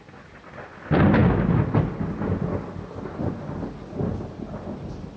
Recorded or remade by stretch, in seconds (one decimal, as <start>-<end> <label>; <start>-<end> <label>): 0.0-5.2 recorded